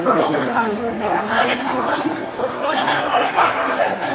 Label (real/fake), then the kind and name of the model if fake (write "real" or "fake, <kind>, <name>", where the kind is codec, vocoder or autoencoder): fake, codec, SNAC